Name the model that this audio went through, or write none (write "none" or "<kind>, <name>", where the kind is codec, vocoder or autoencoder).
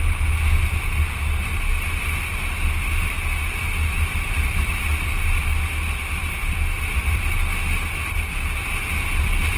none